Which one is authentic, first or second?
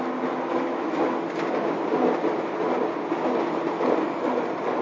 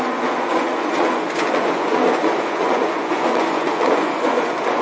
first